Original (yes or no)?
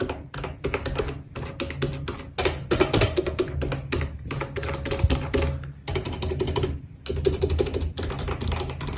yes